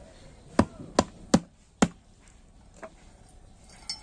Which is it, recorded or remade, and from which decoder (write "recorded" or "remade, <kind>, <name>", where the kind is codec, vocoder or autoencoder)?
recorded